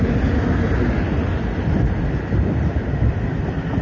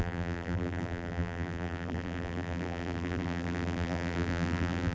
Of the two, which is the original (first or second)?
first